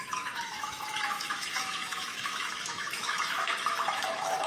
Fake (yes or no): yes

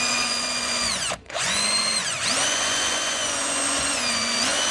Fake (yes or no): yes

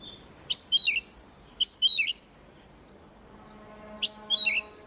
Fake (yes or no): no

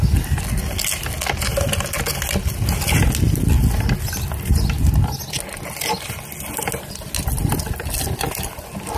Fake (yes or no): no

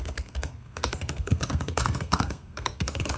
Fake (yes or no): yes